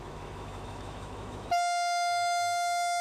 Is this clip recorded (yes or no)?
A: no